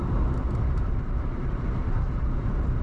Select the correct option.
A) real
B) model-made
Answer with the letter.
B